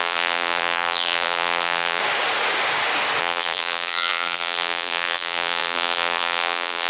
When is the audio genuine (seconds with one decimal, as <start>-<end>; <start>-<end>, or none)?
2.0-3.2